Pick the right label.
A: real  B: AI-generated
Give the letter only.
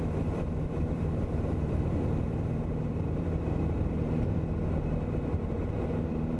B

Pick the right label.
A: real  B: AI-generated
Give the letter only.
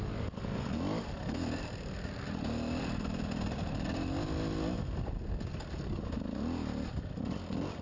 A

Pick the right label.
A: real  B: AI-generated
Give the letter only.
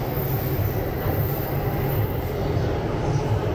A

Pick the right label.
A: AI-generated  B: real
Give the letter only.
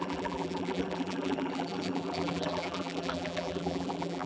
A